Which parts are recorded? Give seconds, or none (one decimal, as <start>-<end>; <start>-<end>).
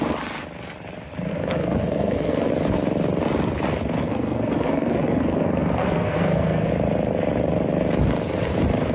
0.0-1.3; 2.5-4.0; 6.7-8.9